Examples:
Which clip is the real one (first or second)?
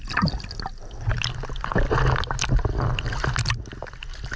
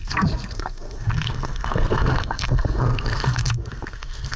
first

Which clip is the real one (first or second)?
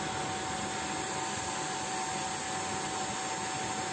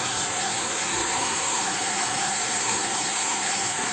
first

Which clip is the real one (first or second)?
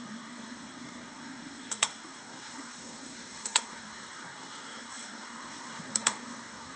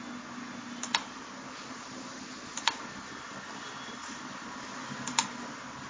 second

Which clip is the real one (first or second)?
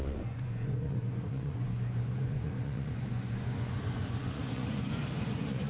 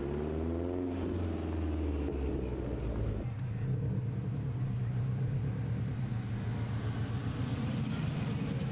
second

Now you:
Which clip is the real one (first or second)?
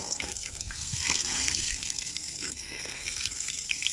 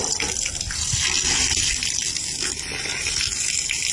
second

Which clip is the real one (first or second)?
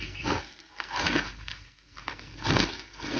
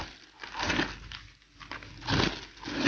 second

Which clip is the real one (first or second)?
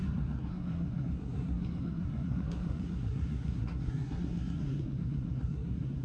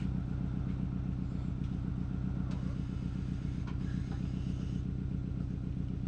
second